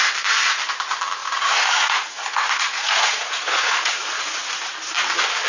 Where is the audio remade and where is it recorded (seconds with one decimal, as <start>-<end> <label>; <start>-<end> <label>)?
0.0-1.2 recorded; 1.2-4.5 remade; 4.5-5.5 recorded